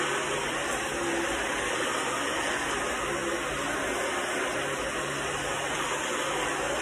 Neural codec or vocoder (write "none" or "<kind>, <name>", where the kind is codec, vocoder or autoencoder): none